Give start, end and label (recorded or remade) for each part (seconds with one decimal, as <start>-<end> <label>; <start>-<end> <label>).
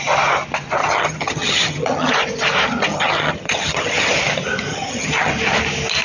0.0-0.8 recorded; 0.8-2.1 remade; 2.1-2.9 recorded; 2.9-4.1 remade; 4.1-4.7 recorded; 4.7-5.3 remade; 5.3-6.0 recorded